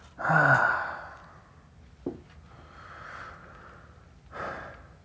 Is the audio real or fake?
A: real